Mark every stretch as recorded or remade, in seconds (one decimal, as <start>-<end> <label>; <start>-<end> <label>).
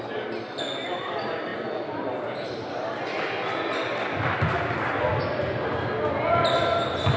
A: 0.0-7.2 recorded